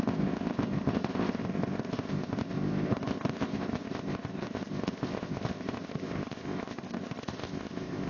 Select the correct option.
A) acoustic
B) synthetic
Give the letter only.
B